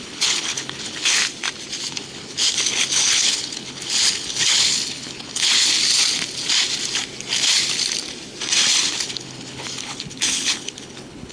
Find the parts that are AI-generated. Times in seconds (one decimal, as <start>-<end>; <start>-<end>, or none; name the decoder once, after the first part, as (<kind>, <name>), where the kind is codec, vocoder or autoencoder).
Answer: 0.0-1.2 (codec, HILCodec); 1.9-5.7; 8.8-11.3